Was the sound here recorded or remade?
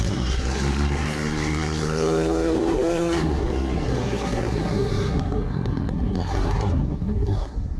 remade